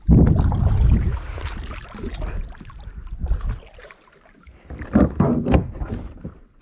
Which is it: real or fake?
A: real